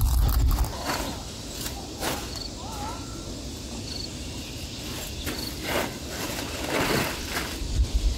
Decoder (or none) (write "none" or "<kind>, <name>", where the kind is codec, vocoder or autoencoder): none